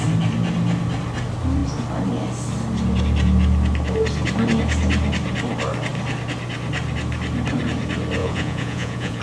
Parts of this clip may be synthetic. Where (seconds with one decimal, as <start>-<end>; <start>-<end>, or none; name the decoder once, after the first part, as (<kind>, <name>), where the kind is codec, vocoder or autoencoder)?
8.2-9.2 (vocoder, Vocos)